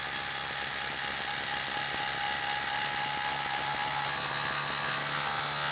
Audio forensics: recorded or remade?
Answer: recorded